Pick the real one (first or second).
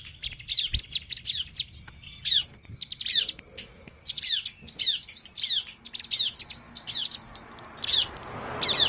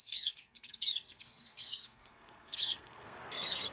first